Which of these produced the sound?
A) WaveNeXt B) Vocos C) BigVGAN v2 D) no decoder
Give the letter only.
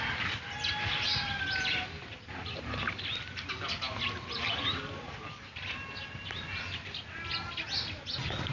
D